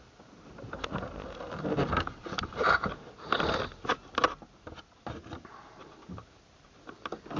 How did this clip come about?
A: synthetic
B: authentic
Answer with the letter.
B